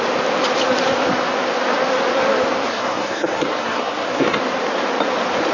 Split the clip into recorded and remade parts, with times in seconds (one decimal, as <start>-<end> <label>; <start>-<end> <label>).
0.0-2.7 recorded; 2.7-4.4 remade; 4.4-5.5 recorded